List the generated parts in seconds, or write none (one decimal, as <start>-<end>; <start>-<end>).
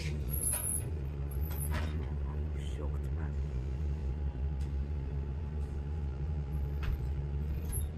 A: 0.0-8.0